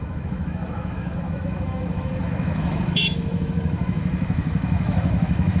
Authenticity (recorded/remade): remade